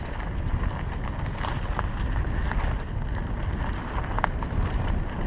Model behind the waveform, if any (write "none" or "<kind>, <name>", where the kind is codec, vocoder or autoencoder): none